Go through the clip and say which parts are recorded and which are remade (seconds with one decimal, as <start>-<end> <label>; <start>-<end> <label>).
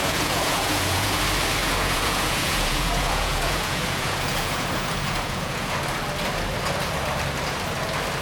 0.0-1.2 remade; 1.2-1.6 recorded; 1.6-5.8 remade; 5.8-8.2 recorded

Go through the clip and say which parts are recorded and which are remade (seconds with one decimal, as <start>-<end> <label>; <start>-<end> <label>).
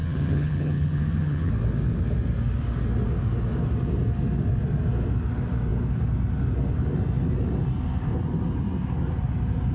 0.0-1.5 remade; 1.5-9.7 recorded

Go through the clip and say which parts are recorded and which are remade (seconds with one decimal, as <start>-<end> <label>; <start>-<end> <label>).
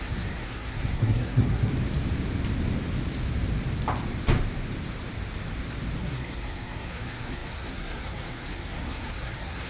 0.0-1.7 remade; 1.7-6.0 recorded; 6.0-9.7 remade